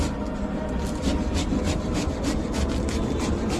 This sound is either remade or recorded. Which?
recorded